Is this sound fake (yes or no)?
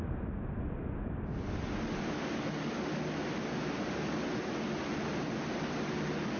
no